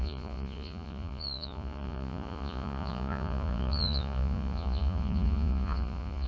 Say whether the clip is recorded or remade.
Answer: remade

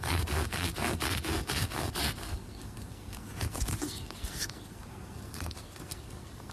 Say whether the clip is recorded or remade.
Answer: remade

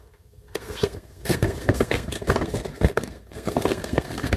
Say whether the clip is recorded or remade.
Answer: remade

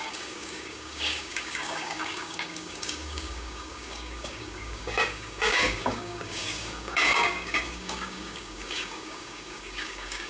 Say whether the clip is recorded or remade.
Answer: remade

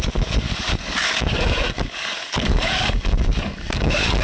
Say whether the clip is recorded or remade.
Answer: remade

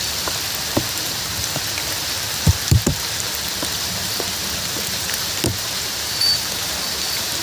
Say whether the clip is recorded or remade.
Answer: remade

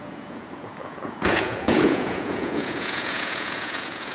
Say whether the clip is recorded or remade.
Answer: remade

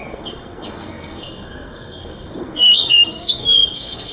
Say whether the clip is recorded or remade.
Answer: remade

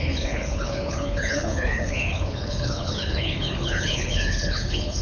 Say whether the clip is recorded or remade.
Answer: remade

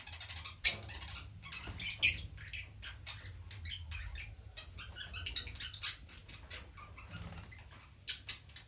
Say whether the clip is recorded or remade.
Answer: recorded